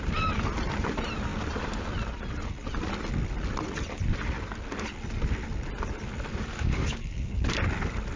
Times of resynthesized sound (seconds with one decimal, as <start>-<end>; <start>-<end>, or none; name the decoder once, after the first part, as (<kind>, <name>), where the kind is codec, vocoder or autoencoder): 6.5-7.5 (codec, DAC)